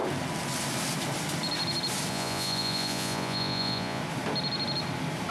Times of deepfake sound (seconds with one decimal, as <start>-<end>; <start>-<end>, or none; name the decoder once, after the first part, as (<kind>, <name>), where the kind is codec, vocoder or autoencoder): 2.1-4.0 (vocoder, Vocos)